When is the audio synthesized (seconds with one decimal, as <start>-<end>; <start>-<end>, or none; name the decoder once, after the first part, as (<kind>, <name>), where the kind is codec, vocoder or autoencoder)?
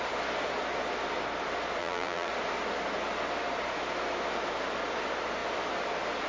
1.8-2.3 (vocoder, BigVGAN v2)